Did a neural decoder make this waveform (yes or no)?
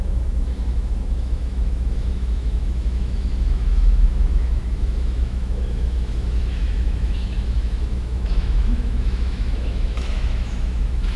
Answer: yes